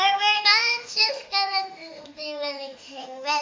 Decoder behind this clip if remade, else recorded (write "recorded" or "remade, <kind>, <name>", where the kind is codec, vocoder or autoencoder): remade, autoencoder, DAC-VAE